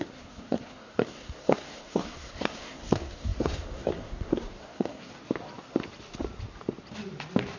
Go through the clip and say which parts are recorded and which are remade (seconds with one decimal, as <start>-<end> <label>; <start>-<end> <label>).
0.0-5.1 remade; 5.1-7.6 recorded